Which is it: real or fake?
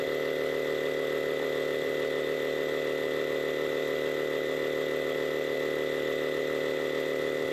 real